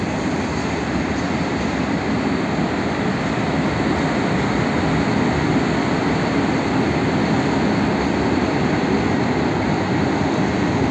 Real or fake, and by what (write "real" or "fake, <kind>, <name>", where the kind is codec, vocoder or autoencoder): real